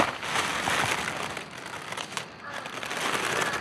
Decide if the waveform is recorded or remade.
recorded